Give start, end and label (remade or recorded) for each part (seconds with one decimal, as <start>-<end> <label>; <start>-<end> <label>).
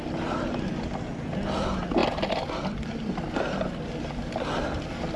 0.0-5.2 recorded